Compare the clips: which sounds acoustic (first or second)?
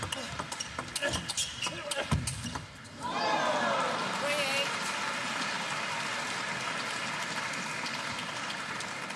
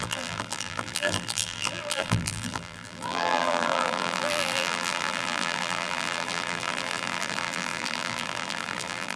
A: first